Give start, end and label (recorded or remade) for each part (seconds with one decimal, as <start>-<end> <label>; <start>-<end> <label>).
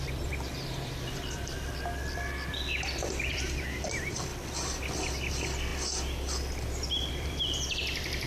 0.0-4.3 remade; 4.3-5.3 recorded; 5.3-5.7 remade; 5.7-7.1 recorded; 7.1-8.3 remade